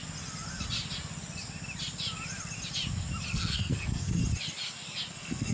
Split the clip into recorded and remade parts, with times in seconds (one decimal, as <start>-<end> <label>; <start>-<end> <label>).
0.0-3.3 recorded; 3.3-4.2 remade; 4.2-5.1 recorded; 5.1-5.5 remade